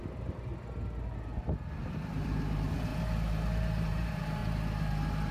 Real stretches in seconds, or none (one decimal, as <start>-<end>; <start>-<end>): 0.5-1.8; 2.9-3.8; 4.4-5.3